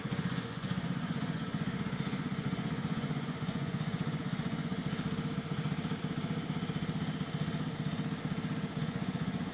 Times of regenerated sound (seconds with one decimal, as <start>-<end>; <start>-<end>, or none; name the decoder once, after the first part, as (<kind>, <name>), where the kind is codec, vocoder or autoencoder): 0.0-4.8 (vocoder, Vocos); 8.8-9.5